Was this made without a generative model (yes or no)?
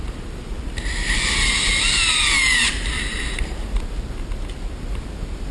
yes